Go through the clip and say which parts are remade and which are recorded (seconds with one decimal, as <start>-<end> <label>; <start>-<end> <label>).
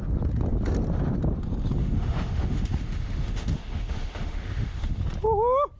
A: 0.0-1.8 recorded; 1.8-5.0 remade; 5.0-5.8 recorded